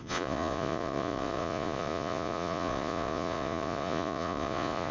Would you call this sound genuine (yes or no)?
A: no